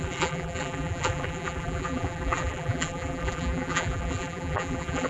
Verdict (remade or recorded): remade